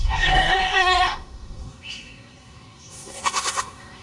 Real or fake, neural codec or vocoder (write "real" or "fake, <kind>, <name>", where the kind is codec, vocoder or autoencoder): fake, codec, SNAC